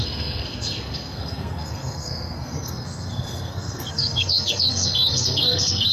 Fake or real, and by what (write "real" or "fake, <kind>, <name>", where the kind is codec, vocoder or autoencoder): fake, codec, SNAC